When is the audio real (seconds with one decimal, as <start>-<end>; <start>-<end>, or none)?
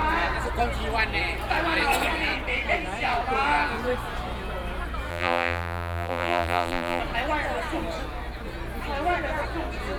0.0-5.1; 7.0-10.0